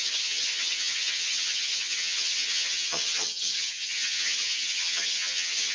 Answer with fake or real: fake